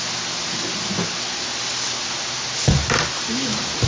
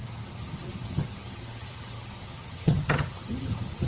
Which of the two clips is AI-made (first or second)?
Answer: second